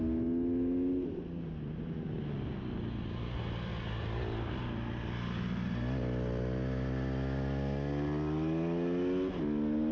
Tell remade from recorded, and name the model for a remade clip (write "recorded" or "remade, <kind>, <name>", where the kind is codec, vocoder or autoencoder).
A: recorded